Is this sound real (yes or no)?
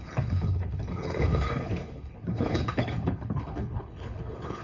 no